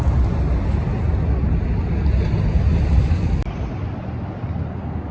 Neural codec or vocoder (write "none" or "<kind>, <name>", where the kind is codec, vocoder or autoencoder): none